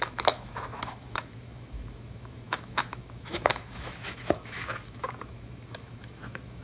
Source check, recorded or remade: remade